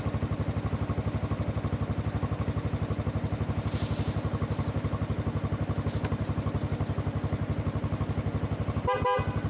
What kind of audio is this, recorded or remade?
recorded